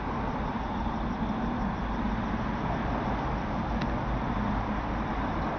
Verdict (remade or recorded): recorded